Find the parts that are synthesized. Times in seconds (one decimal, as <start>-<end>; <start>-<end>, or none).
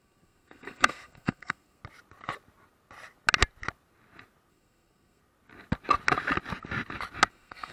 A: 0.0-1.8; 4.5-5.2; 7.3-7.7